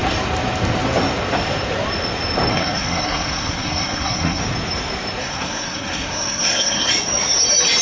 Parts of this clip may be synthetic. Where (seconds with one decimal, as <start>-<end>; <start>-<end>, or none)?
2.5-4.4; 5.2-6.9